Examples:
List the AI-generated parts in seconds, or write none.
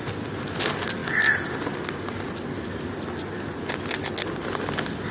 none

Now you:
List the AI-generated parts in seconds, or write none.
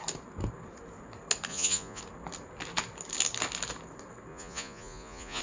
1.5-2.0 (vocoder, Vocos); 4.3-5.4